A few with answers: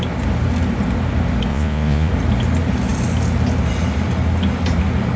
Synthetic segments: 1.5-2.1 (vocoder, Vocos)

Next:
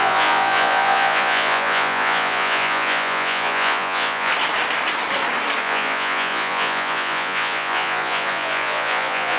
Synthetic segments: 0.0-4.3 (vocoder, Vocos); 5.6-9.4

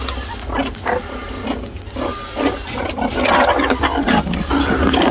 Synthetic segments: none

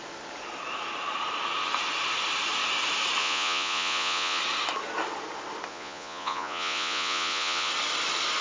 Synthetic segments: 3.2-4.4 (vocoder, Vocos); 5.7-7.7

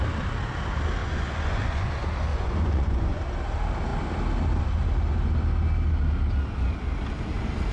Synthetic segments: 1.0-1.9 (vocoder, Vocos); 2.3-3.2

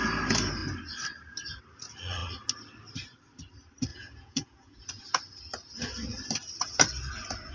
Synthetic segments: 3.9-5.0 (vocoder, Vocos)

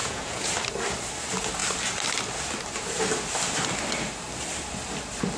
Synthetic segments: 0.0-0.5 (vocoder, Vocos)

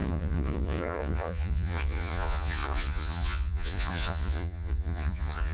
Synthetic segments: 0.0-5.5 (vocoder, Vocos)